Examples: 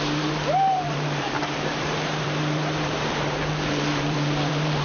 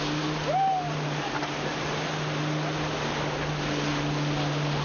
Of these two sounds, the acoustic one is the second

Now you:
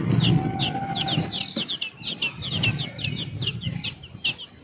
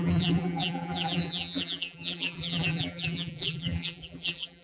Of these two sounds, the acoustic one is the first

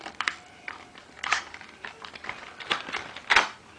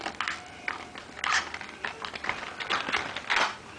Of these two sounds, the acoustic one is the second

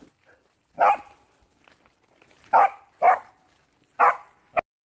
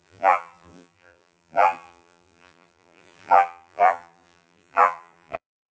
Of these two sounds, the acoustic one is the first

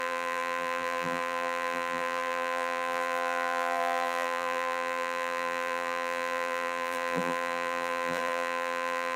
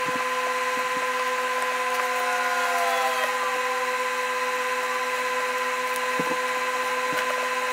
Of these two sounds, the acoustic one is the second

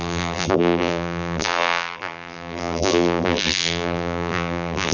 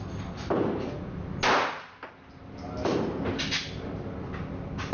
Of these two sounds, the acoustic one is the second